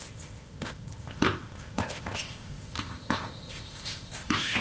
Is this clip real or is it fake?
fake